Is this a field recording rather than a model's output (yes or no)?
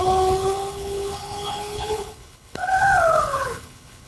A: no